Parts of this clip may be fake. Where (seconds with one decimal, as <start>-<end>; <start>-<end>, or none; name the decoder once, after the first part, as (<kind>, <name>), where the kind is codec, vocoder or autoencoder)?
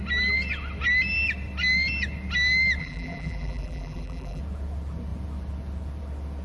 2.8-4.4 (vocoder, BigVGAN v2)